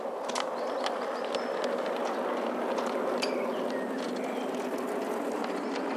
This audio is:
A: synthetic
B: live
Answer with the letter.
B